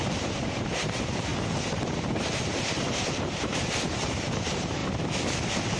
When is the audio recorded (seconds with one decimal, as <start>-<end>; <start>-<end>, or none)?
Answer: 4.8-5.8